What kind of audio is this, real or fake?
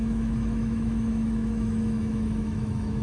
fake